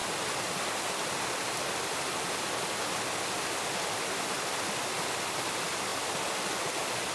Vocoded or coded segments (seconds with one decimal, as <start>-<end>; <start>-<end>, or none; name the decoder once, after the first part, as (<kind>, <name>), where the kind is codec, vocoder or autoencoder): none